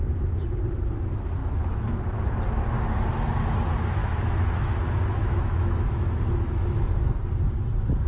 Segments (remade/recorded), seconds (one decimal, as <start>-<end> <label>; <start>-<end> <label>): 0.0-1.4 recorded; 1.4-2.3 remade; 2.3-4.0 recorded; 4.0-4.8 remade; 4.8-5.2 recorded; 5.2-7.0 remade; 7.0-8.1 recorded